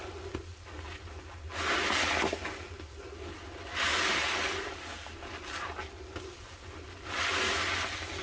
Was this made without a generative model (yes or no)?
yes